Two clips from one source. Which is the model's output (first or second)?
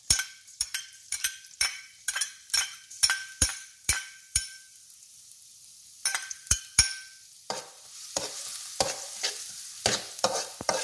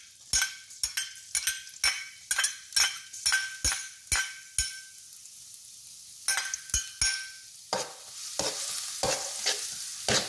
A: first